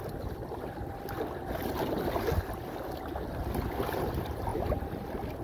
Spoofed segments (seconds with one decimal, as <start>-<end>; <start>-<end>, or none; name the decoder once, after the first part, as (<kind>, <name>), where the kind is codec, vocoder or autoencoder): 0.0-1.4 (vocoder, BigVGAN v2); 4.1-5.4